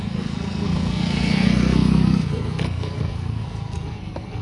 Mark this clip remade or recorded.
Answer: remade